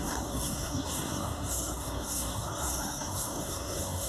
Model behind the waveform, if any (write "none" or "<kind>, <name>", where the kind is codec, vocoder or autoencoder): codec, SNAC